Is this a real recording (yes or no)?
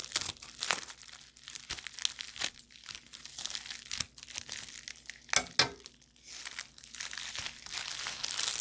yes